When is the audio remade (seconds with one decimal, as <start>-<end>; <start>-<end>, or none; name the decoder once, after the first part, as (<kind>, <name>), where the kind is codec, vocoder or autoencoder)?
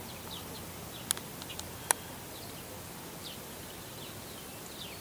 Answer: none